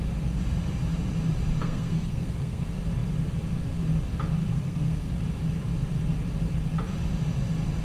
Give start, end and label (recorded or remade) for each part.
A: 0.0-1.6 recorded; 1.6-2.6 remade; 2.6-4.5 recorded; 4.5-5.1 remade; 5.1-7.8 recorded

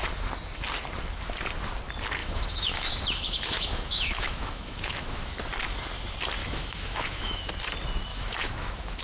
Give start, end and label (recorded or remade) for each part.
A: 0.0-2.2 recorded; 2.2-5.4 remade; 5.4-6.4 recorded; 6.4-7.5 remade; 7.5-8.1 recorded; 8.1-9.0 remade